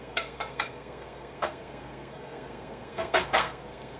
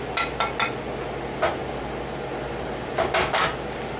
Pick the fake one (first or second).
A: first